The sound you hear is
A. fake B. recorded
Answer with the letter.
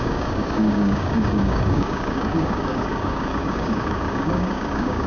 A